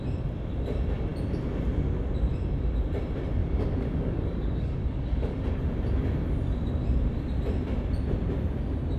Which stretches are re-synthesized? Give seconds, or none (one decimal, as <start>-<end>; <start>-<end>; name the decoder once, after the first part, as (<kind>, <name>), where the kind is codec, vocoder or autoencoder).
3.4-5.6 (codec, DAC)